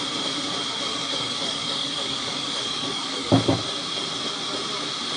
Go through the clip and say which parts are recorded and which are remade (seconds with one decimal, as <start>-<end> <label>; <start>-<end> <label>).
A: 0.0-0.9 recorded; 0.9-3.3 remade; 3.3-5.2 recorded